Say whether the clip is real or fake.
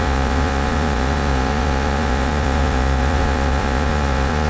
fake